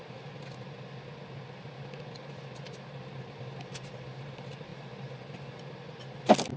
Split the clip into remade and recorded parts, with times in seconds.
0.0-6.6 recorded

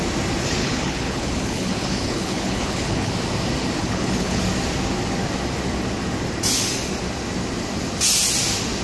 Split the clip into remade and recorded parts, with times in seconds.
0.0-0.6 recorded; 0.6-3.1 remade; 3.1-3.8 recorded; 3.8-4.4 remade; 4.4-8.8 recorded

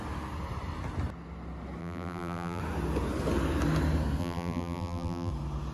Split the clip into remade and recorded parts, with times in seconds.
0.0-1.8 recorded; 1.8-2.6 remade; 2.6-4.2 recorded; 4.2-5.3 remade; 5.3-5.7 recorded